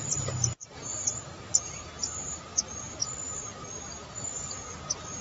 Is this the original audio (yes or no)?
no